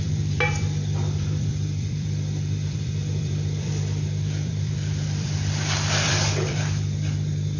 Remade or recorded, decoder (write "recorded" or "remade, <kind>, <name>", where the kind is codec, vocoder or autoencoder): remade, vocoder, BigVGAN v2